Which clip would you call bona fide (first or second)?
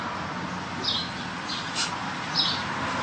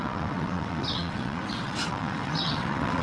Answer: first